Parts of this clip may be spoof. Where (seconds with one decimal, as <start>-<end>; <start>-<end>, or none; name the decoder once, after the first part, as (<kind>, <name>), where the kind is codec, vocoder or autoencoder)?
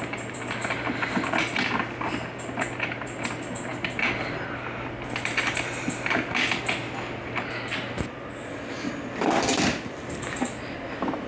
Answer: none